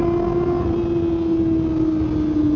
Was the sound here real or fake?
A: real